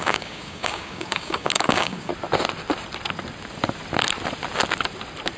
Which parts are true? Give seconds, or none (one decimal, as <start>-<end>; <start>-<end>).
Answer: 2.1-5.4